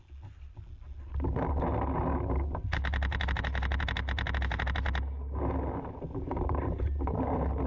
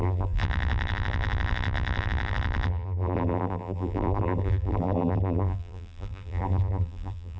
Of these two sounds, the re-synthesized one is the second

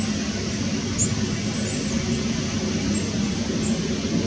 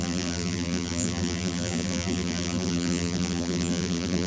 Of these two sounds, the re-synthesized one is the second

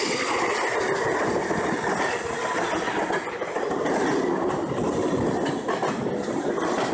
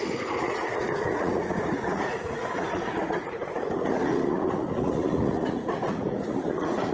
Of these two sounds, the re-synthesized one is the second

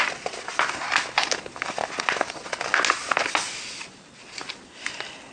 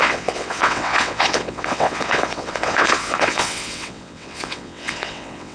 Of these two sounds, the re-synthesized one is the second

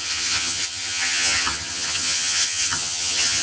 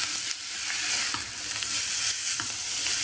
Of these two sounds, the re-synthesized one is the first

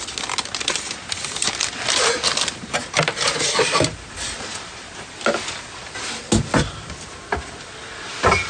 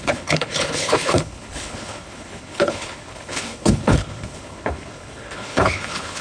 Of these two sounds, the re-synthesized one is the second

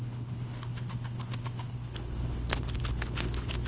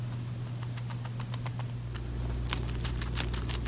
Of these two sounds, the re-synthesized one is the first